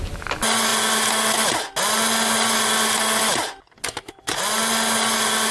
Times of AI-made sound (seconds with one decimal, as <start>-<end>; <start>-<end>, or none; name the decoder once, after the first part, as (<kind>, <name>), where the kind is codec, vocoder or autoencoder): none